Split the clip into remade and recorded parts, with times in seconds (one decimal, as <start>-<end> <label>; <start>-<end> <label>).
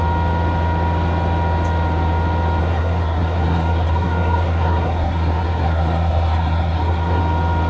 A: 0.0-2.6 recorded; 2.6-7.2 remade; 7.2-7.7 recorded